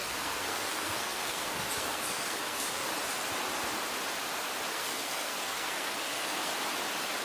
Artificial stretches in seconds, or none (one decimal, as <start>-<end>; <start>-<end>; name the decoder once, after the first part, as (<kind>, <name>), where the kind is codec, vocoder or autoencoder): 0.0-2.9 (codec, SNAC); 4.7-6.5